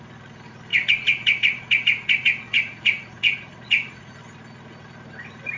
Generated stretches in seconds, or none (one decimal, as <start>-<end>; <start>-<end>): 0.7-4.1